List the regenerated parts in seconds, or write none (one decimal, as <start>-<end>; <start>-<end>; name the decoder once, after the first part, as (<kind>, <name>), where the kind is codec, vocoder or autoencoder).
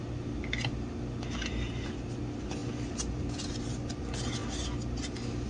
none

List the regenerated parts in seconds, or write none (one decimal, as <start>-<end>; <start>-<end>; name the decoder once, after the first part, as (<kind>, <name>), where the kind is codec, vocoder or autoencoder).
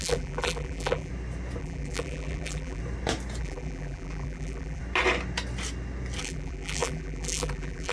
0.0-1.1 (vocoder, BigVGAN v2); 1.6-2.8; 3.4-4.8; 6.2-7.9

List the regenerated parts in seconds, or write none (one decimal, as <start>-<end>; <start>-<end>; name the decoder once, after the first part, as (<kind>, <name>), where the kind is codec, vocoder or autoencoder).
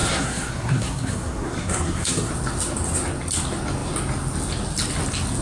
0.0-2.3 (codec, SNAC)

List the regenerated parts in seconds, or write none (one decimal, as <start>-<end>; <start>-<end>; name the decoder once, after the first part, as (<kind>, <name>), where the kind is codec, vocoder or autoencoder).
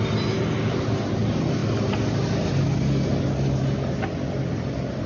none